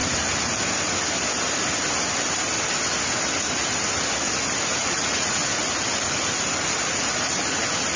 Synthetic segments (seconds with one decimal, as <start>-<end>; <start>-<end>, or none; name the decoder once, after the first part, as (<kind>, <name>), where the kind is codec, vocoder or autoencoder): 4.8-5.4 (vocoder, Vocos)